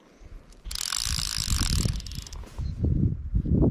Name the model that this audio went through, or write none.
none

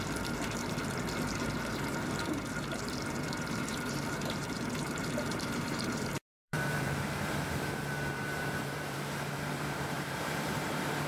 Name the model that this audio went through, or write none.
vocoder, BigVGAN v2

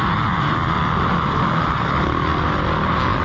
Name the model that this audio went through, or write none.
vocoder, BigVGAN v2